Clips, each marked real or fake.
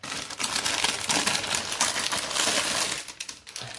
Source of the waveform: real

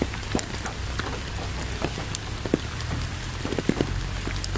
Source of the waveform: real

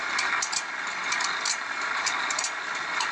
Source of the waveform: real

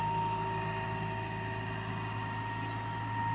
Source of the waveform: real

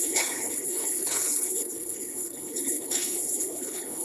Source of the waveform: fake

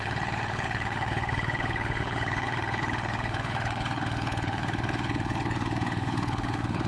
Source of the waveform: fake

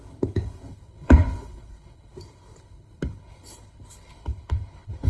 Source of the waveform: fake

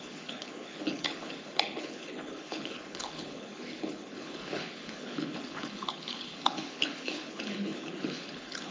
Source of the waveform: fake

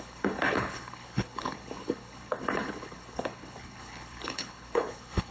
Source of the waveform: fake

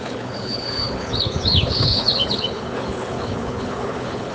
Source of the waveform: fake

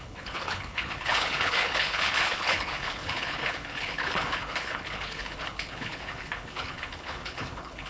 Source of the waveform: fake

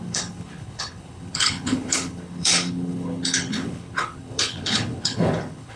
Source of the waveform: fake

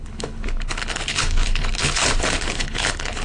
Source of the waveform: fake